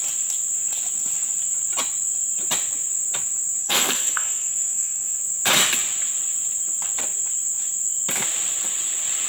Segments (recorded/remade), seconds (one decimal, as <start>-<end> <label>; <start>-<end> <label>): 0.0-3.6 recorded; 3.6-5.2 remade; 5.2-9.3 recorded